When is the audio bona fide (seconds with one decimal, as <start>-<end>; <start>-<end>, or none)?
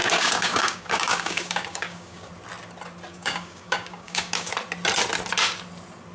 2.3-3.1; 4.5-6.1